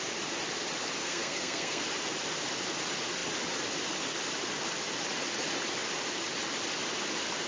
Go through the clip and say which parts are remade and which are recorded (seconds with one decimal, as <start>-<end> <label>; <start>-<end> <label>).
0.0-1.0 recorded; 1.0-1.8 remade; 1.8-7.5 recorded